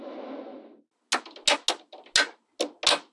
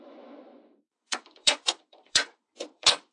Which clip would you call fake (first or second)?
second